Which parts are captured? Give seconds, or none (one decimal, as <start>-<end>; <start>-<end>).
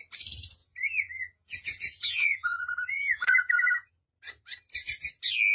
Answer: 0.0-0.6; 3.9-5.5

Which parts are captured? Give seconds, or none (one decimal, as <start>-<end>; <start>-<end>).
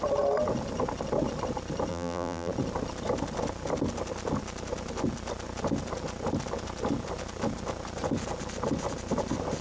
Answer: 0.0-1.9; 2.5-9.6